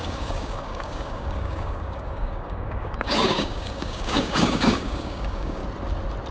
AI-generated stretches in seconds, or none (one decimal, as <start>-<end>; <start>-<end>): 0.0-5.6